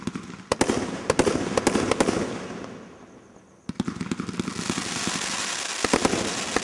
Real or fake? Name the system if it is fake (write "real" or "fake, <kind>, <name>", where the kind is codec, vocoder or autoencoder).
real